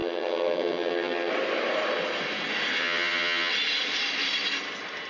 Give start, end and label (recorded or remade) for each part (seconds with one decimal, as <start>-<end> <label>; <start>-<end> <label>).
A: 0.0-1.3 remade; 1.3-2.8 recorded; 2.8-3.5 remade; 3.5-5.1 recorded